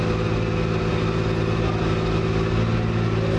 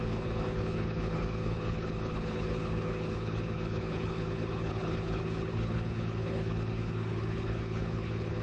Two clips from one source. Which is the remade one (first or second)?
second